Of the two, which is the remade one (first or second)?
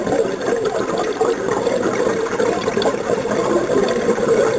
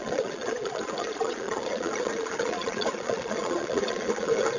second